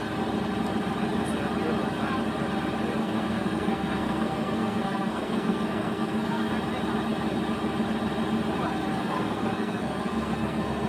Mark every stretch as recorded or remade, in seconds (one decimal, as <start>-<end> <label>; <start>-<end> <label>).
0.0-3.0 recorded; 3.0-6.5 remade; 6.5-8.9 recorded; 8.9-10.9 remade